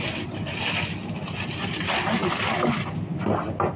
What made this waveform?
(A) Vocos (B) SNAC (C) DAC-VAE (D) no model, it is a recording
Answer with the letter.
D